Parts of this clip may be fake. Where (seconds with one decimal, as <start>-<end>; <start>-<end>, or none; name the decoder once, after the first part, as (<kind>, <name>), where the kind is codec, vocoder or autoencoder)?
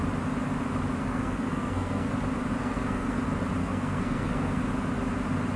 1.0-2.1 (codec, SNAC); 2.6-3.2; 3.6-4.6